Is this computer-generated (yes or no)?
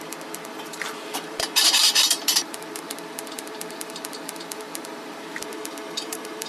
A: yes